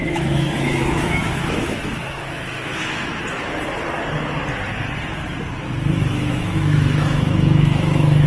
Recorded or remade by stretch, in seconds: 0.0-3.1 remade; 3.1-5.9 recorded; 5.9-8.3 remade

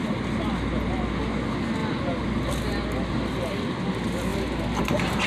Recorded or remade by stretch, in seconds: 0.0-5.3 recorded

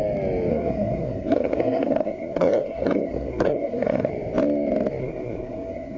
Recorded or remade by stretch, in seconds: 0.0-0.5 recorded; 0.5-4.1 remade; 4.1-5.0 recorded; 5.0-6.0 remade

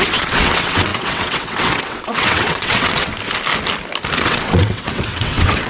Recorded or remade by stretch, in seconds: 0.0-3.1 remade; 3.1-4.2 recorded; 4.2-5.7 remade

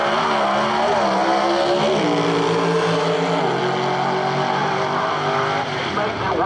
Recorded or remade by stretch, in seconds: 0.0-4.6 recorded; 4.6-5.8 remade; 5.8-6.5 recorded

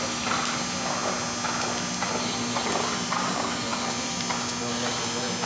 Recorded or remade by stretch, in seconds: 0.0-5.5 recorded

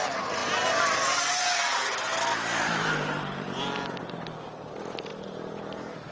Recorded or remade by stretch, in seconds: 0.0-6.1 remade

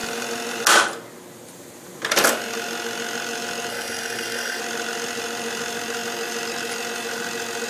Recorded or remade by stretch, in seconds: 0.0-3.7 recorded; 3.7-4.6 remade; 4.6-7.7 recorded